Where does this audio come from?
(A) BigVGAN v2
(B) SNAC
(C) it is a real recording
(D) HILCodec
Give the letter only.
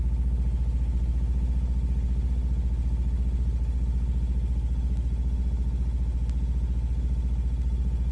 C